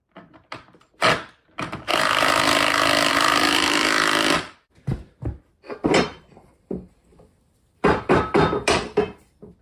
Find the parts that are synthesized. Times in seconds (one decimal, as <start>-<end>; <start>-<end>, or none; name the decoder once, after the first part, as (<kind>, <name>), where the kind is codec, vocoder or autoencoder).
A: 0.0-1.9 (vocoder, BigVGAN v2); 3.1-9.6